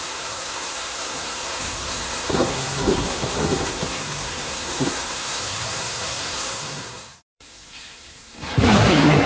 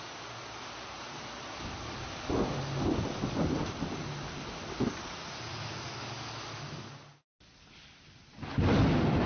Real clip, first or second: second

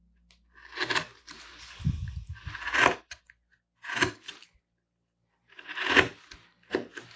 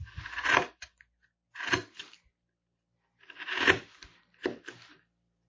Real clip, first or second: first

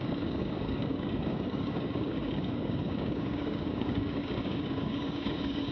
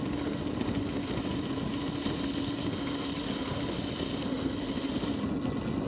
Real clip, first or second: second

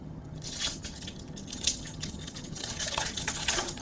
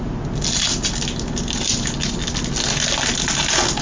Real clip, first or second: second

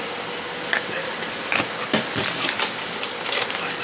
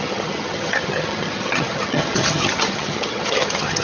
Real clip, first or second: first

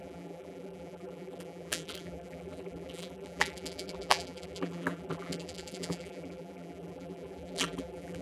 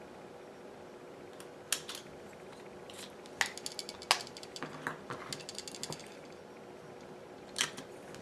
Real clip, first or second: second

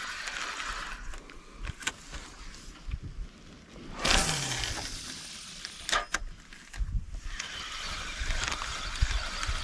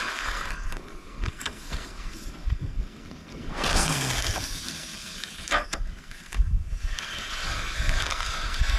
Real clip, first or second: first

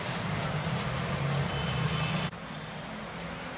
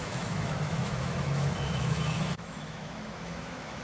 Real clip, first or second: first